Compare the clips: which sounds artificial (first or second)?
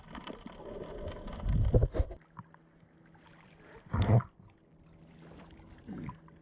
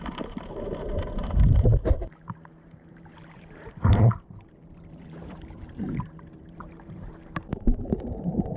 second